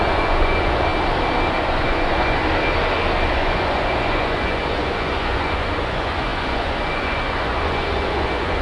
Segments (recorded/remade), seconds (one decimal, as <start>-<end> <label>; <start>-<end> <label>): 0.0-0.9 remade; 0.9-1.6 recorded; 1.6-2.4 remade; 2.4-3.3 recorded; 3.3-8.6 remade